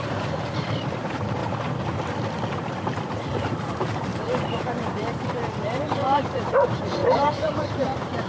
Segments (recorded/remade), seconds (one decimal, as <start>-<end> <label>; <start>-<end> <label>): 0.0-1.4 remade; 1.4-2.5 recorded; 2.5-8.3 remade